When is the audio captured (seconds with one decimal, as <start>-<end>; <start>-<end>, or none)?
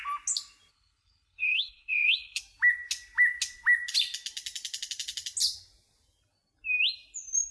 0.0-0.7; 2.4-7.5